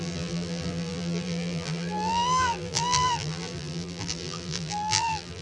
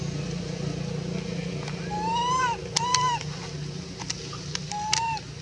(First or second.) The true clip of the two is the second